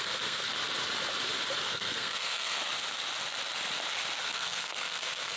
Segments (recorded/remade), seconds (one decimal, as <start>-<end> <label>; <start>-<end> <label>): 0.0-0.5 remade; 0.5-1.6 recorded; 1.6-2.6 remade; 2.6-4.2 recorded; 4.2-5.4 remade